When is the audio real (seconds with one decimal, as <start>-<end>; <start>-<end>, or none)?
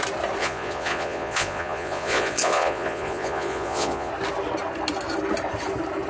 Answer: 0.0-0.4; 4.1-6.1